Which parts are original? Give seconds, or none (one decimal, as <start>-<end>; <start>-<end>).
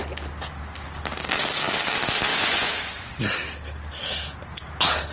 0.0-2.3; 3.2-5.1